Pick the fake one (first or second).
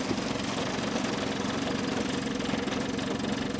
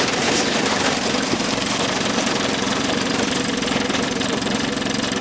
second